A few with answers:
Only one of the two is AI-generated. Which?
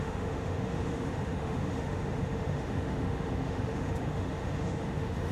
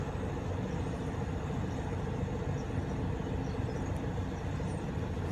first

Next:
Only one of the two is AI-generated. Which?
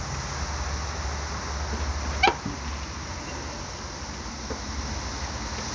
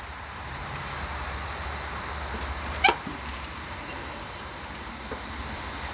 second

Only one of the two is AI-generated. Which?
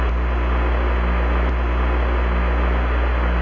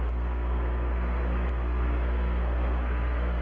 second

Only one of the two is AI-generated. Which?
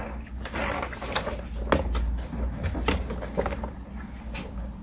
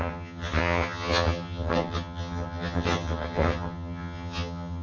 second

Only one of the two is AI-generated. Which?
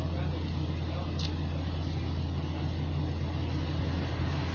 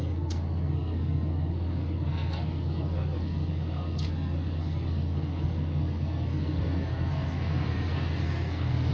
second